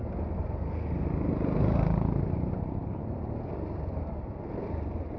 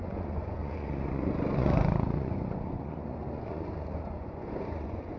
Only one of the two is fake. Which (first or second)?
second